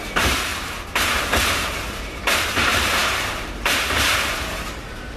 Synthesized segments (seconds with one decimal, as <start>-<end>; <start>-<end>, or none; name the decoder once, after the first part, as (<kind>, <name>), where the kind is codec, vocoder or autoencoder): 0.0-0.5 (vocoder, BigVGAN v2); 1.5-5.2